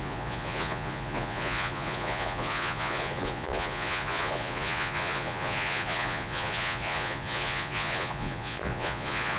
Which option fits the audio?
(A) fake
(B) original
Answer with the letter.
A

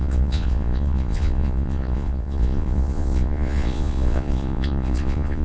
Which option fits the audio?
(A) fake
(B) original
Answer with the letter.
A